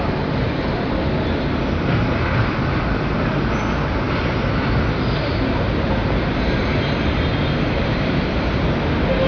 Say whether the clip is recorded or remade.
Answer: recorded